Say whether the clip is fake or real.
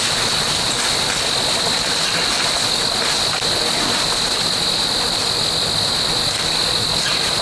real